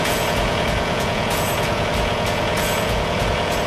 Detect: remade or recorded remade